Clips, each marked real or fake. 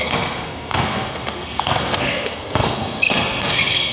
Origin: fake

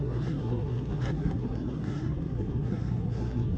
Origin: fake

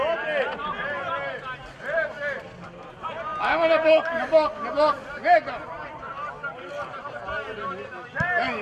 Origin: real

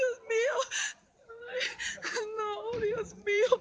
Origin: fake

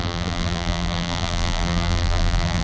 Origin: fake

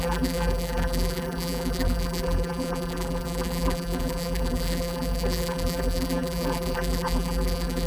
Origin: fake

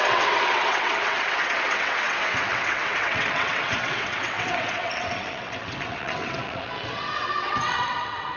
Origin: fake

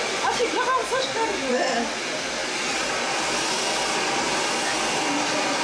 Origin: real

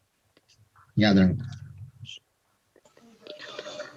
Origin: real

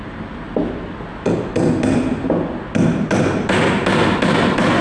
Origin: real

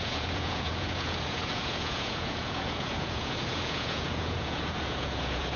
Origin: fake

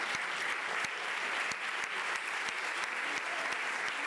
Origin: real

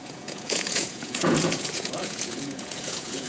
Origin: fake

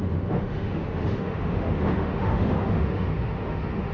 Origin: fake